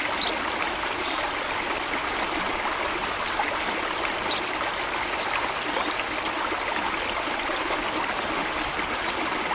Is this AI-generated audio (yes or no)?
no